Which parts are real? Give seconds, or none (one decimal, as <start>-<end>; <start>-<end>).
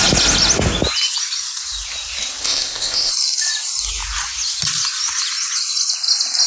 0.0-2.4; 3.1-6.5